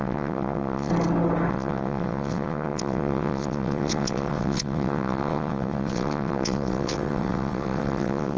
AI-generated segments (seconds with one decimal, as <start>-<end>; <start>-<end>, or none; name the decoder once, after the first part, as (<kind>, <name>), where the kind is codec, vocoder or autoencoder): 0.0-0.9 (vocoder, WaveNeXt); 1.5-8.4